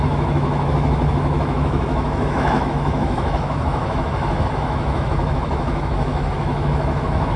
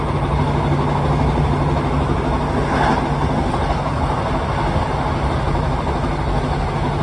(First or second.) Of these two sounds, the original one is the second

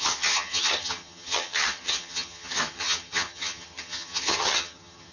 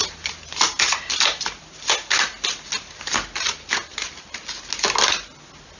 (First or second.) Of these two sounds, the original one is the second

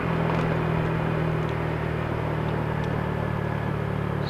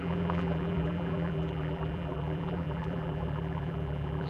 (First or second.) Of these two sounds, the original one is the first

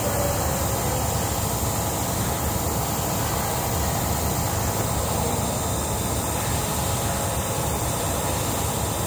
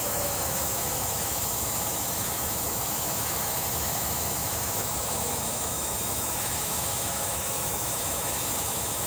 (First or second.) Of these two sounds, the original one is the first